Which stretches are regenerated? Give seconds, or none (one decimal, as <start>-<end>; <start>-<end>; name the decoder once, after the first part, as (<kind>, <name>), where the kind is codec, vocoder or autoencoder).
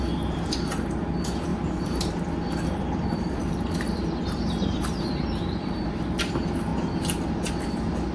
1.5-2.3 (vocoder, BigVGAN v2); 3.4-6.2